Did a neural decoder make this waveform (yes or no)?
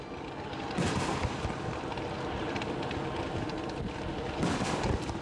no